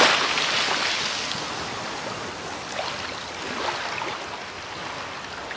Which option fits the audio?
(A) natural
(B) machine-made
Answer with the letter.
A